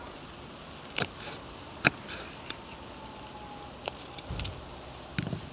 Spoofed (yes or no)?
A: no